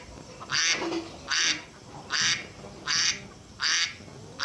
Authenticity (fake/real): real